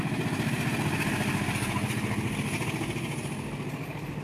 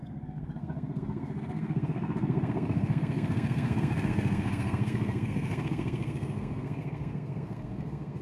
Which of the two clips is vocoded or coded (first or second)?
second